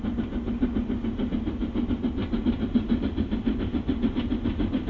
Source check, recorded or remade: recorded